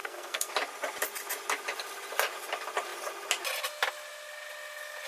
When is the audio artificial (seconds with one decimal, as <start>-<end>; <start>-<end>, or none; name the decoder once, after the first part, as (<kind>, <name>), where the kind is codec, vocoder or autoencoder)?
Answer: 0.0-0.5 (codec, SNAC)